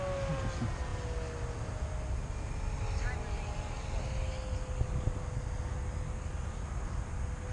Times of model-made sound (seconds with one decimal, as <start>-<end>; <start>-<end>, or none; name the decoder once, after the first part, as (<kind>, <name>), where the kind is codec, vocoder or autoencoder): none